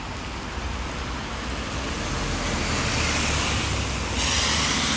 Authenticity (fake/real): real